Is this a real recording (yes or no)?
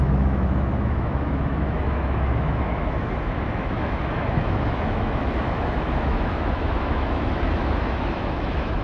no